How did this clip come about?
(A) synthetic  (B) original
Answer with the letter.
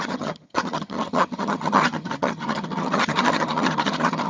A